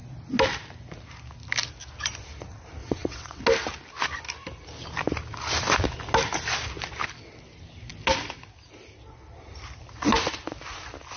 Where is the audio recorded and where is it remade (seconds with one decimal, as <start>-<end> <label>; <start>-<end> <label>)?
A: 0.0-2.8 recorded; 2.8-3.4 remade; 3.4-11.2 recorded